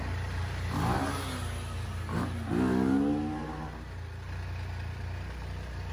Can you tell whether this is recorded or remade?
recorded